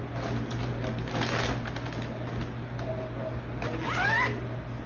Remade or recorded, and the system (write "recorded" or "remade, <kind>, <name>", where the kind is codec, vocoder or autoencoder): recorded